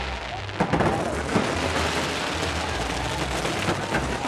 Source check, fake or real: real